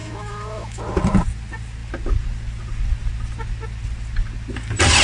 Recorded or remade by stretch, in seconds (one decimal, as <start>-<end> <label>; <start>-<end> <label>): 0.0-0.8 remade; 0.8-5.0 recorded